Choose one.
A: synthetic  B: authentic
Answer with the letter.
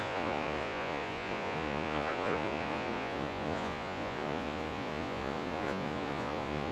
A